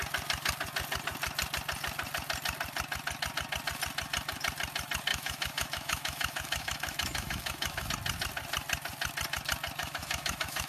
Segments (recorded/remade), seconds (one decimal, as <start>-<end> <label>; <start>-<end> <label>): 0.0-5.1 recorded; 5.1-7.9 remade; 7.9-9.8 recorded; 9.8-10.7 remade